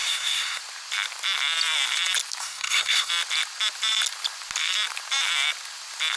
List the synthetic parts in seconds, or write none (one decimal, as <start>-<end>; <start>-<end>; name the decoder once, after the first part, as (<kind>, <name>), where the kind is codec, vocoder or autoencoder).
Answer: 0.0-0.6 (codec, SNAC); 2.4-3.1